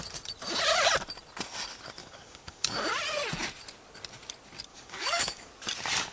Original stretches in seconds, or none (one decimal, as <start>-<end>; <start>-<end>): 0.0-2.0; 2.9-4.7; 5.5-6.1